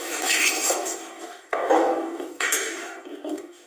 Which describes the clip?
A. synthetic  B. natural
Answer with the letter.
A